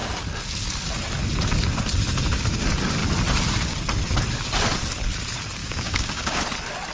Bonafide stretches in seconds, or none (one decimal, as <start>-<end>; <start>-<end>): 0.0-5.6; 6.4-6.9